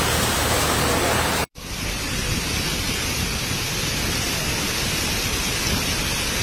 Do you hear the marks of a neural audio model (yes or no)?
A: no